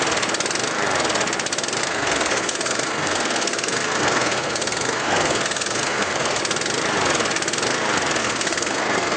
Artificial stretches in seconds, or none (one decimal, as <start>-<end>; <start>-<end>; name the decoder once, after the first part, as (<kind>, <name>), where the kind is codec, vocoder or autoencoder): 1.8-6.4 (codec, SNAC); 8.2-9.2